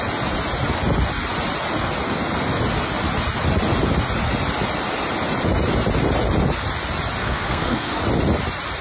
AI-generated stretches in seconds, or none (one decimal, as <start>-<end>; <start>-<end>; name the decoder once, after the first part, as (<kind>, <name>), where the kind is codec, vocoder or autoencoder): 7.2-8.0 (codec, SNAC)